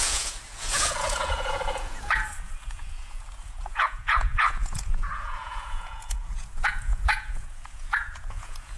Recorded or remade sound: remade